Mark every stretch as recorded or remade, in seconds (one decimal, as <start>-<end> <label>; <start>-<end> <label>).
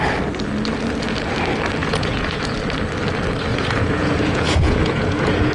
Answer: 0.0-1.8 recorded; 1.8-2.4 remade; 2.4-3.5 recorded; 3.5-5.5 remade